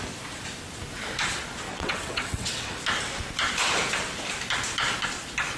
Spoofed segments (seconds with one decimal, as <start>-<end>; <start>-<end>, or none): 1.7-2.8